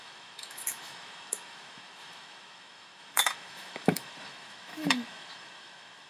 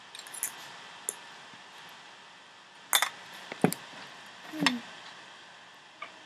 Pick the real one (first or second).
second